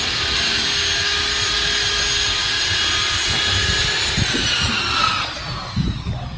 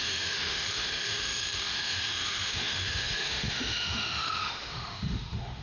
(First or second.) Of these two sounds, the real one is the first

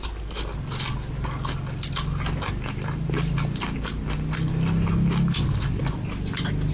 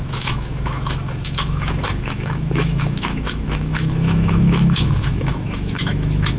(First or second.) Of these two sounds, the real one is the first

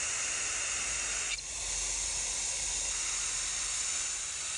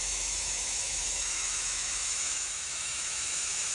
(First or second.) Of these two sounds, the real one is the first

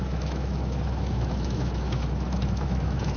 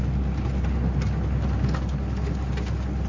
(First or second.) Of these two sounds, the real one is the second